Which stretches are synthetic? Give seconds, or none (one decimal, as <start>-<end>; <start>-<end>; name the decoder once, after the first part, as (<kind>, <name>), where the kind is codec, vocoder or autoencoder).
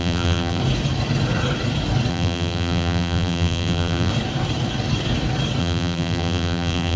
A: 0.0-0.6 (vocoder, BigVGAN v2); 2.1-4.1; 5.6-7.0